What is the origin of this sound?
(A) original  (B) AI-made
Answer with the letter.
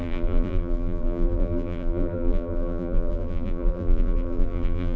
B